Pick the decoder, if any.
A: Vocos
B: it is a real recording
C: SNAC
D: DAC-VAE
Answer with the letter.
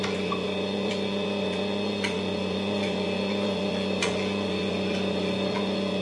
A